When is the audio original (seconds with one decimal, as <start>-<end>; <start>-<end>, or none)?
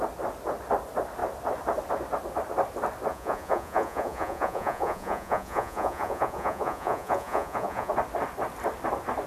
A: 0.0-3.1; 7.9-9.3